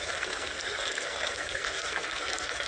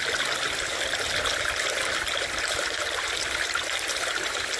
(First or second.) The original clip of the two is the second